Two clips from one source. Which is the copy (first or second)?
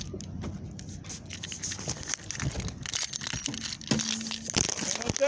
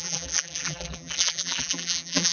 second